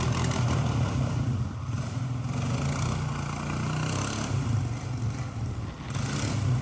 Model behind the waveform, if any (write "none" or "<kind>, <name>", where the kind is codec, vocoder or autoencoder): none